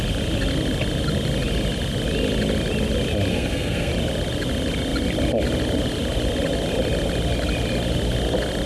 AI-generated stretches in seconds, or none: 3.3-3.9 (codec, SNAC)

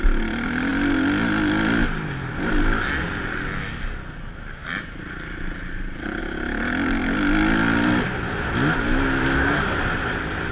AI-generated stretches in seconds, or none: 4.6-6.2 (vocoder, BigVGAN v2)

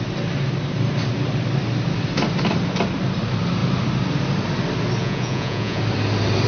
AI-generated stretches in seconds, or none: 5.0-5.8 (vocoder, Vocos)